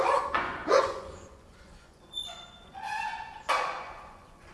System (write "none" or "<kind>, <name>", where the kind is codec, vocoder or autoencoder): vocoder, Vocos